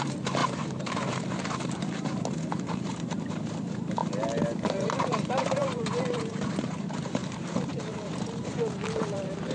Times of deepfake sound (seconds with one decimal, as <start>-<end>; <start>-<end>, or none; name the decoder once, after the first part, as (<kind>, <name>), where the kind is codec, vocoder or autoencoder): 0.0-4.0 (vocoder, BigVGAN v2); 4.7-9.5